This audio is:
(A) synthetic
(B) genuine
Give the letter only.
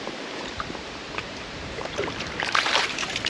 A